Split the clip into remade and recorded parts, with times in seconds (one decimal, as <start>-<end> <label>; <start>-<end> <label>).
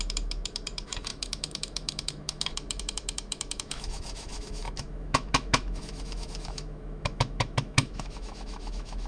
0.0-9.1 remade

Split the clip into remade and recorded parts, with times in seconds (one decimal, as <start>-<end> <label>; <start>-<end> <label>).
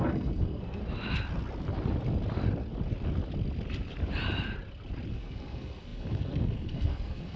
0.0-0.8 remade; 0.8-5.1 recorded; 5.1-7.4 remade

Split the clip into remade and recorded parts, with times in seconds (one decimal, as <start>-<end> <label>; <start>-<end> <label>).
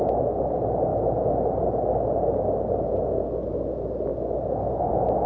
0.0-5.3 recorded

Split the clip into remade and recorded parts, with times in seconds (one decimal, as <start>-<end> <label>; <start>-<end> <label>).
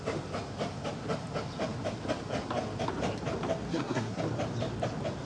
0.0-3.7 recorded; 3.7-4.2 remade; 4.2-5.3 recorded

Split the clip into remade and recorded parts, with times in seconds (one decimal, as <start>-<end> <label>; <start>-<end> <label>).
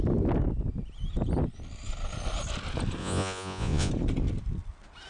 0.0-3.0 recorded; 3.0-3.9 remade; 3.9-5.1 recorded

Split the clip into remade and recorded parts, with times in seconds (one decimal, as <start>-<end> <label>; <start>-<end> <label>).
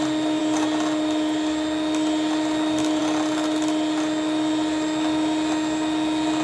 0.0-6.4 recorded